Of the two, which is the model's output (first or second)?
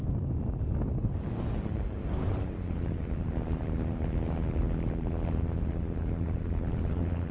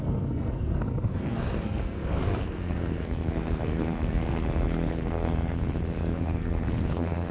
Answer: second